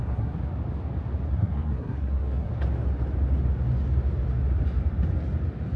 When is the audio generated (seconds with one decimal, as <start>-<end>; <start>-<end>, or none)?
0.0-0.4; 1.3-2.5

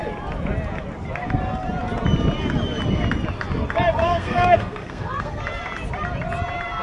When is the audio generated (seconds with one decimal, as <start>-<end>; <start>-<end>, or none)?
4.0-5.4

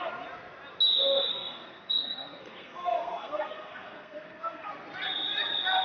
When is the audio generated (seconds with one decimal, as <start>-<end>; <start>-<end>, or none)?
1.3-4.7

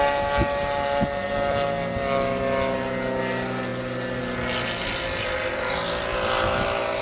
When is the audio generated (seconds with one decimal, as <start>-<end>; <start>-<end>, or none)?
none